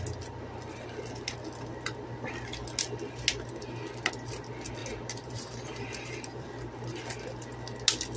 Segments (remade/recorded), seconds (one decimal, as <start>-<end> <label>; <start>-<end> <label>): 0.0-4.8 recorded; 4.8-6.5 remade; 6.5-8.2 recorded